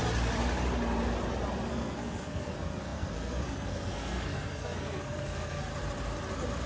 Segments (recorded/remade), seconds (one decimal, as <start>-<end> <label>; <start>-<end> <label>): 0.0-1.7 recorded; 1.7-5.7 remade; 5.7-6.7 recorded